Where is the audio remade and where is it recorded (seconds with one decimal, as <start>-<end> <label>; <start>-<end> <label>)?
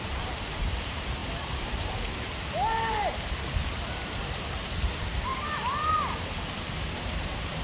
0.0-5.3 remade; 5.3-7.1 recorded; 7.1-7.6 remade